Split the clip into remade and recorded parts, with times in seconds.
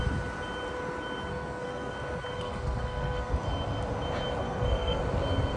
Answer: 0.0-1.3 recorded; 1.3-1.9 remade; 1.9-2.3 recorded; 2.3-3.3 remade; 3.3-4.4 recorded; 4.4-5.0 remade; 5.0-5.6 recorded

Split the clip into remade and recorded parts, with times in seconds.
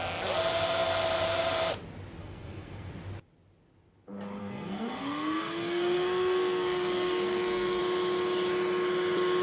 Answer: 0.0-2.2 recorded; 2.2-2.9 remade; 2.9-4.4 recorded; 4.4-7.8 remade; 7.8-9.4 recorded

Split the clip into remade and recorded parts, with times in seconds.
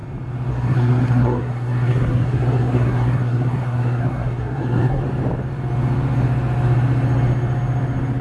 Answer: 0.0-0.5 recorded; 0.5-5.0 remade; 5.0-8.2 recorded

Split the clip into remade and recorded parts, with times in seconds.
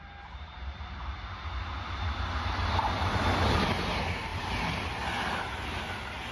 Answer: 0.0-6.3 recorded